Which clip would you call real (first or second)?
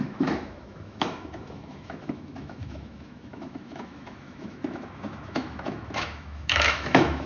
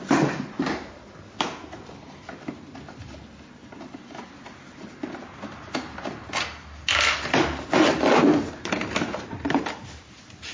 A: second